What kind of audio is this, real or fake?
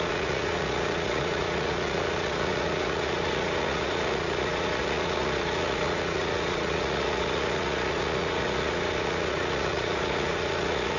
fake